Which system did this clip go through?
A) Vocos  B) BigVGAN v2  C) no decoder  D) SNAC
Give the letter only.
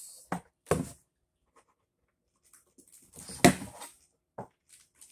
C